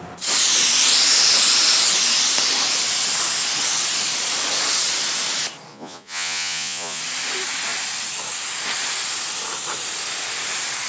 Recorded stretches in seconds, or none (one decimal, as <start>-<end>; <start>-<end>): 0.0-5.7; 7.0-10.9